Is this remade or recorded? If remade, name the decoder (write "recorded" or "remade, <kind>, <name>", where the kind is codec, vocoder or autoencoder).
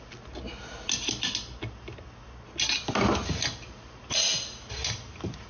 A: recorded